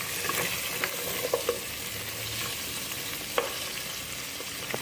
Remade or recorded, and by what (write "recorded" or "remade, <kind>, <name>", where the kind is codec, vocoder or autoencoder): recorded